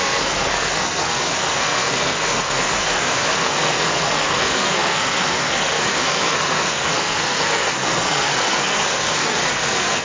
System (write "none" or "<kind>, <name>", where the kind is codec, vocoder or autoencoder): codec, SNAC